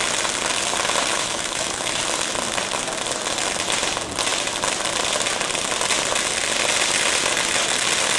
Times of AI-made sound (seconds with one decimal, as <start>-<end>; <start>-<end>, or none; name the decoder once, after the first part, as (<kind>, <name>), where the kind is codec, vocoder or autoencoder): 1.1-2.0 (autoencoder, DAC-VAE)